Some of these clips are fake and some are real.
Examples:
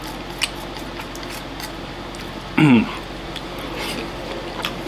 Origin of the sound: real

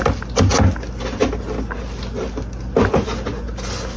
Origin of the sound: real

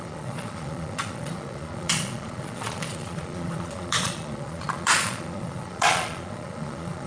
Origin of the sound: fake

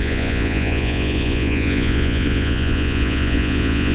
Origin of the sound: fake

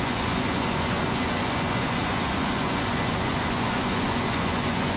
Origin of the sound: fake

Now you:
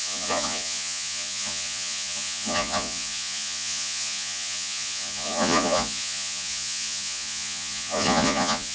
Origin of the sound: fake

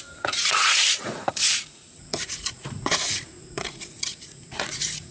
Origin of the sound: fake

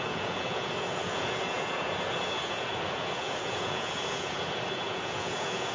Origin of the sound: fake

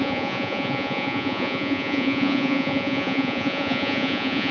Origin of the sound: fake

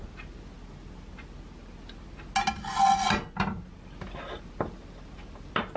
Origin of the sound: real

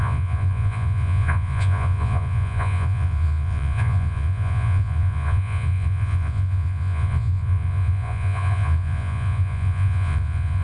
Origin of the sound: fake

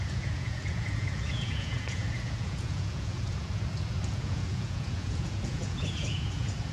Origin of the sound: fake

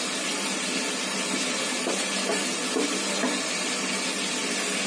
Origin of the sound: real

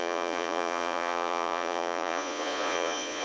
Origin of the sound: fake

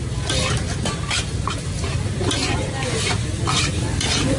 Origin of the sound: real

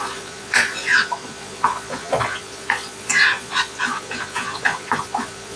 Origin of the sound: fake